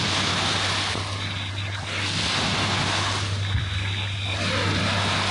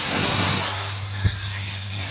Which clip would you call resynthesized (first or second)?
second